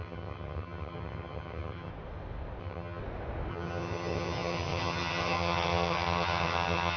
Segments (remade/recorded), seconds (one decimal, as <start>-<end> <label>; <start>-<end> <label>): 0.0-1.9 remade; 1.9-2.6 recorded; 2.6-3.0 remade; 3.0-3.5 recorded; 3.5-7.0 remade